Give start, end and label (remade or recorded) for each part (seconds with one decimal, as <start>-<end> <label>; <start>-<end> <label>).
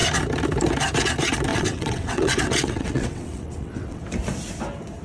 0.0-1.5 recorded; 1.5-4.0 remade; 4.0-5.0 recorded